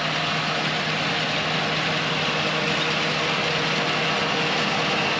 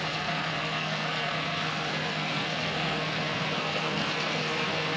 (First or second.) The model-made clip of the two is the second